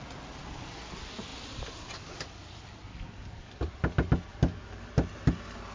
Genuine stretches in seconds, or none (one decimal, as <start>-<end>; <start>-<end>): 0.0-2.9; 3.7-4.3; 4.9-5.7